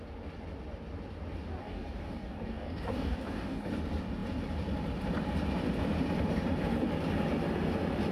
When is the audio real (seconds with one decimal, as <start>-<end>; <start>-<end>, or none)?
0.0-1.6; 3.7-8.1

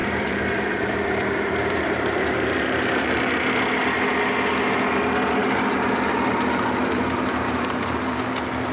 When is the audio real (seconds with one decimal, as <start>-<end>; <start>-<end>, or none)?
3.3-5.4; 8.2-8.7